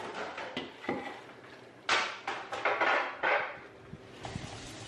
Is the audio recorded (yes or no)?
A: yes